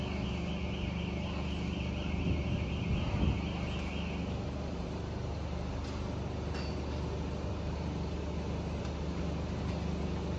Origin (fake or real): real